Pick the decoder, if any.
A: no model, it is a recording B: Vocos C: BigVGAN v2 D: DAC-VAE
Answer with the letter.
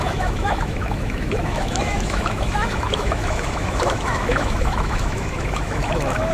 D